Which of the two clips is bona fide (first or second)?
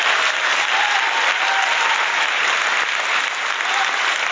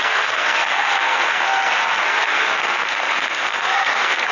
first